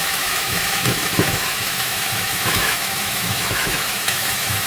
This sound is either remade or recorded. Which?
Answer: remade